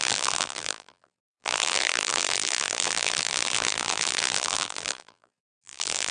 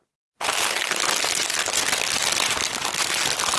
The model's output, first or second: first